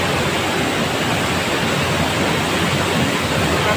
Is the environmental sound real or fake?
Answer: real